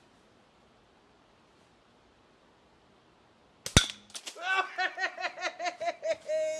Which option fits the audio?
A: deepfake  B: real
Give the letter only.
B